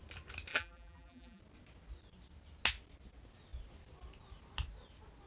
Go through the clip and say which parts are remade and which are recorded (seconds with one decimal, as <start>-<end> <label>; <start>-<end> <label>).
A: 0.0-0.5 recorded; 0.5-1.4 remade; 1.4-5.3 recorded